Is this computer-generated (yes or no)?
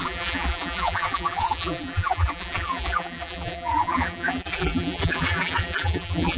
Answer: yes